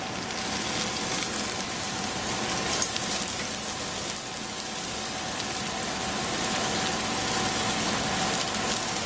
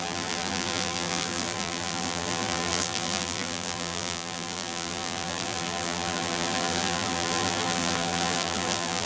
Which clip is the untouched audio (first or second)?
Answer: first